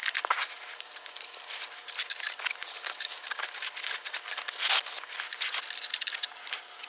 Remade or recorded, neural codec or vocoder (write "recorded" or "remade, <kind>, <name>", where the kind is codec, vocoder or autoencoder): recorded